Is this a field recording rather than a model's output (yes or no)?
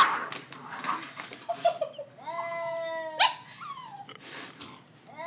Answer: yes